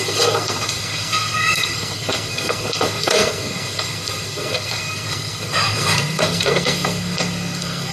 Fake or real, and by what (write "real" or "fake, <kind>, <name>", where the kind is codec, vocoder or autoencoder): fake, codec, SNAC